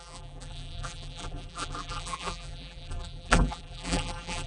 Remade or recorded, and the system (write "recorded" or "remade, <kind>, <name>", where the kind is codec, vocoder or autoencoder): remade, vocoder, BigVGAN v2